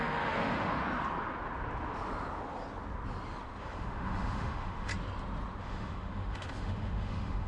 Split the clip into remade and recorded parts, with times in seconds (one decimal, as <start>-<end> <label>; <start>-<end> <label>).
0.0-0.8 remade; 0.8-3.6 recorded; 3.6-4.9 remade; 4.9-5.6 recorded; 5.6-7.5 remade